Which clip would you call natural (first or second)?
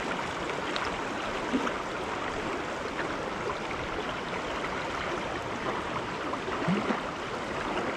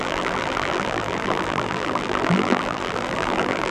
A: first